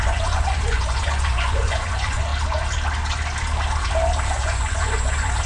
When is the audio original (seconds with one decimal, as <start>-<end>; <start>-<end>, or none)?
2.3-4.2